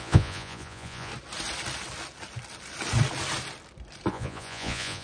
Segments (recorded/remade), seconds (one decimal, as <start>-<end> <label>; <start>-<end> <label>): 0.0-1.1 remade; 1.1-4.1 recorded; 4.1-5.0 remade